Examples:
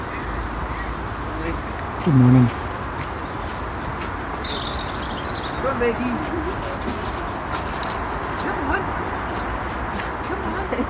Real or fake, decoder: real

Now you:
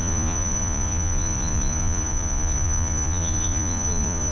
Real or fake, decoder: fake, vocoder, Vocos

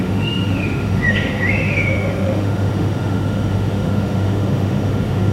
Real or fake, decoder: fake, autoencoder, DAC-VAE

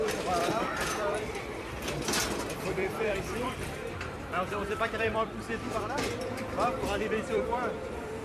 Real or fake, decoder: fake, vocoder, BigVGAN v2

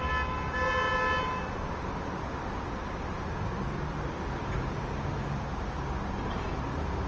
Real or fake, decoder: real